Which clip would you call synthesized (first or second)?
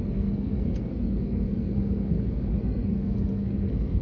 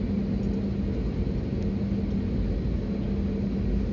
first